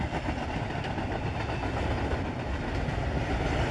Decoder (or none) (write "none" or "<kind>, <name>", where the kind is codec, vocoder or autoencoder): none